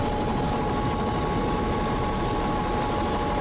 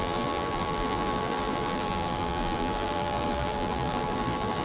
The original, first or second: first